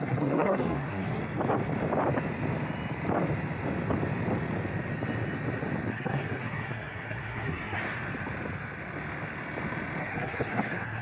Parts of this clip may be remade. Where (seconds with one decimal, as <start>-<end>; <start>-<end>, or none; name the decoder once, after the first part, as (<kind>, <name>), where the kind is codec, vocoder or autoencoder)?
0.0-1.2 (codec, SNAC); 5.9-7.8; 10.0-11.0